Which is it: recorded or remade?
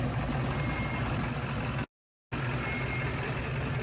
recorded